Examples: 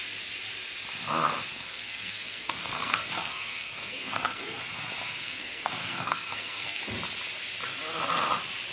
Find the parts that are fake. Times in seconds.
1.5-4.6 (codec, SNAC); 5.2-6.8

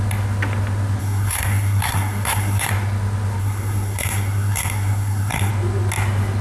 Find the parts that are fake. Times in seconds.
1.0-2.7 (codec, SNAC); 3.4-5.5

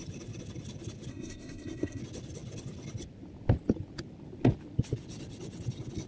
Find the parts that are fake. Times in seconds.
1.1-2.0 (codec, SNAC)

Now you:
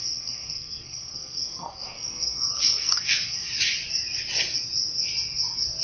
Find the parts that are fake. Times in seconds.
0.0-3.5 (codec, SNAC)